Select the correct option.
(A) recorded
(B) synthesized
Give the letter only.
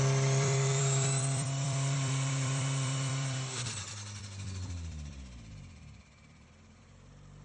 B